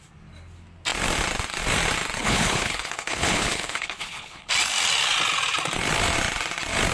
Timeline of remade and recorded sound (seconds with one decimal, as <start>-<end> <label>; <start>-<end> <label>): 0.0-2.2 recorded; 2.2-4.5 remade; 4.5-6.9 recorded